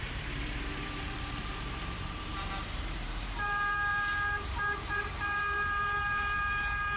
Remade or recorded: remade